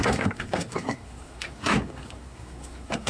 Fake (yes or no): yes